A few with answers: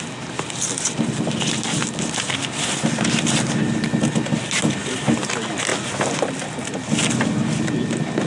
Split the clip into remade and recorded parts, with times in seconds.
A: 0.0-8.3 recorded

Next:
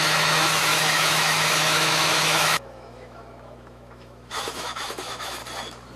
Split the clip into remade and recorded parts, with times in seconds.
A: 0.0-5.4 remade; 5.4-6.0 recorded

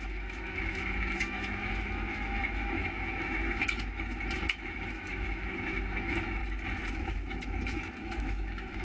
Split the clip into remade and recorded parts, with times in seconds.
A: 0.0-6.4 remade; 6.4-6.9 recorded; 6.9-8.8 remade

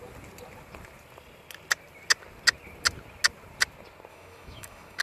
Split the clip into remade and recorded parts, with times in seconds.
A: 0.0-4.1 recorded; 4.1-5.0 remade